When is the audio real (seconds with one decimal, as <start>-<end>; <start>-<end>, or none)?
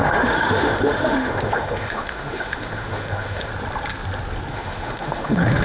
3.5-4.5